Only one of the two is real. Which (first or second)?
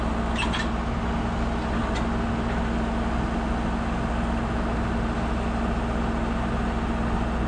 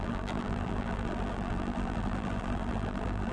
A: first